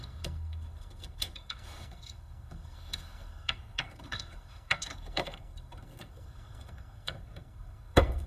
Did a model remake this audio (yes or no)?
yes